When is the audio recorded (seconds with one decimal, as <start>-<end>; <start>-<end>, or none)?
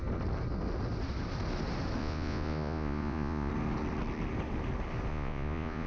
0.0-2.0; 3.5-5.1